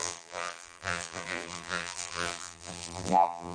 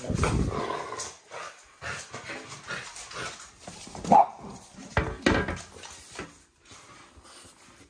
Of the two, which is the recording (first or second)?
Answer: second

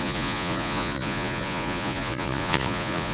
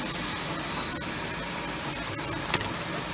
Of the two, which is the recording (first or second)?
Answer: second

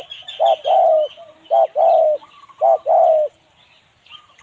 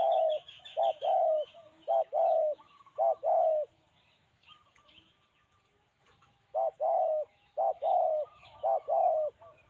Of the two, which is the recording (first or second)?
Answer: first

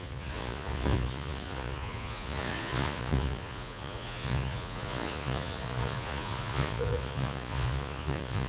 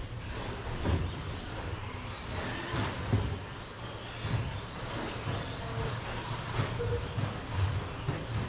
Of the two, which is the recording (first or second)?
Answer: second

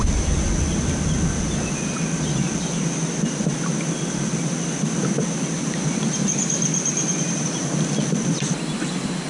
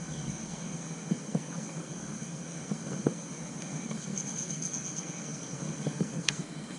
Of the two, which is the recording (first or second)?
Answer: first